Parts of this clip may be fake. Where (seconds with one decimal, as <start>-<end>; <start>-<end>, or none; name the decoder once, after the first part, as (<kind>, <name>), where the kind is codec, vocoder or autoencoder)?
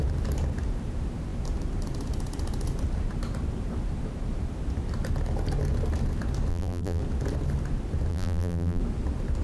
6.5-7.0 (vocoder, BigVGAN v2); 8.1-8.8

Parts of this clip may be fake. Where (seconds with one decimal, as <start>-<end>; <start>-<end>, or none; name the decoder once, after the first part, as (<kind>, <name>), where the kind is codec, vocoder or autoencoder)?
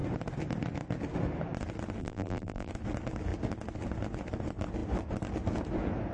2.0-2.7 (vocoder, BigVGAN v2)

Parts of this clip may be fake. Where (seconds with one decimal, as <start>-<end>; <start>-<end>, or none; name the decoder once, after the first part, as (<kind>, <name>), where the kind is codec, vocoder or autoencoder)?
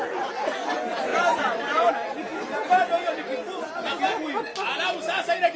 1.1-1.9 (vocoder, BigVGAN v2)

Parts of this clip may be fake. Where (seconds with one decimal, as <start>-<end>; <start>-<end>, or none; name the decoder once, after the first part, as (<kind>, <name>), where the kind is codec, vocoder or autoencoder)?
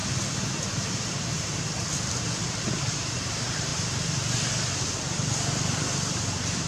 0.7-3.7 (vocoder, BigVGAN v2); 4.8-6.7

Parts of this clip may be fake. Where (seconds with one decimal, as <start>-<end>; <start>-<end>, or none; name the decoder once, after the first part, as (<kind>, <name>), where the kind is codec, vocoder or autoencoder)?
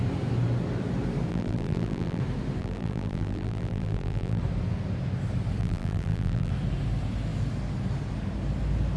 1.3-2.2 (vocoder, BigVGAN v2); 2.6-4.4; 5.6-6.5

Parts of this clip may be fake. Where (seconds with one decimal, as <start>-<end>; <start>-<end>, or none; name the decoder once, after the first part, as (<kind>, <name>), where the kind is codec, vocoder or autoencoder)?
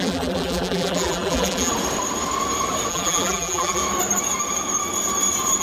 0.0-1.7 (vocoder, BigVGAN v2); 2.9-3.8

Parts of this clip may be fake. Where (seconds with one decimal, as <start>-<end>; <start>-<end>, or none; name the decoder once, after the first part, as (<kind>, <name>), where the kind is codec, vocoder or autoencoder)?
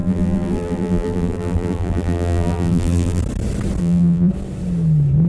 0.0-3.2 (vocoder, BigVGAN v2); 3.8-4.3